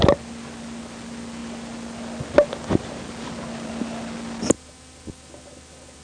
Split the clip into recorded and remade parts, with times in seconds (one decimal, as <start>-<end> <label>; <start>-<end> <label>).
0.0-6.0 recorded